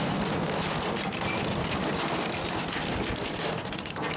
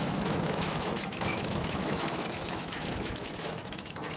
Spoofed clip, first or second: second